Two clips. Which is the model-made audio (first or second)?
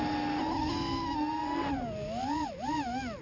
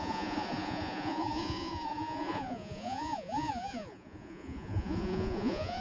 second